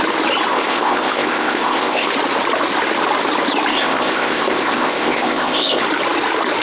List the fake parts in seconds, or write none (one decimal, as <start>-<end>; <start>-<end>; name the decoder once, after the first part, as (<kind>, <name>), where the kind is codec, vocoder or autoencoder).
0.5-2.1 (codec, ZipCodec); 3.7-5.8